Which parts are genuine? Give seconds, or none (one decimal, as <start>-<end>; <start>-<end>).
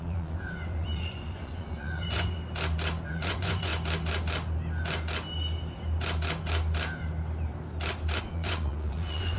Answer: 2.4-3.1; 3.7-8.2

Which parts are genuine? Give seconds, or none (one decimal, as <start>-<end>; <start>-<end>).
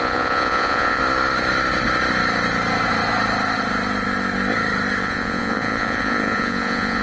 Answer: 1.0-5.0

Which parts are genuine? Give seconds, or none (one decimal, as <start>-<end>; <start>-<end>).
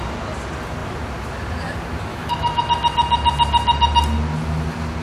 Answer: 0.0-2.1; 2.6-5.0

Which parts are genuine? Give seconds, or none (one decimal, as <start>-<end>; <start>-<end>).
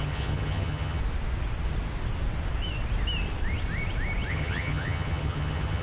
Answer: 1.0-4.3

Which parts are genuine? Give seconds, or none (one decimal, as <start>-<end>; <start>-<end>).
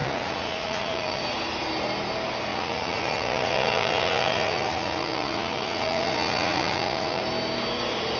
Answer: 1.2-2.5; 7.2-8.2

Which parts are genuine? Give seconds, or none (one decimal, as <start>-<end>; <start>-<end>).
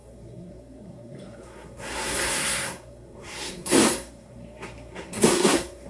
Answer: none